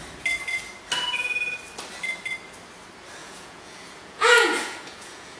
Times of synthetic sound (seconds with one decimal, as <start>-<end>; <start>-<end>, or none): 3.2-5.4